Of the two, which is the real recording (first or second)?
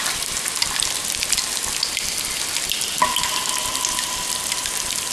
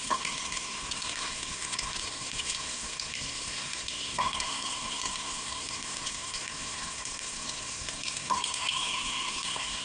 first